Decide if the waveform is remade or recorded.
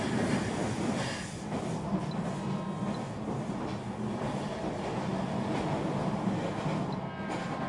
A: recorded